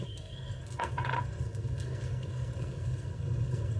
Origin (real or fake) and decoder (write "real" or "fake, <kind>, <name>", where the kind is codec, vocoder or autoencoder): fake, codec, SNAC